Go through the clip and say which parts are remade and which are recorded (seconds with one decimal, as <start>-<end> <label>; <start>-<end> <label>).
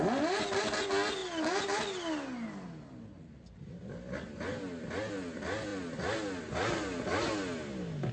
0.0-8.1 recorded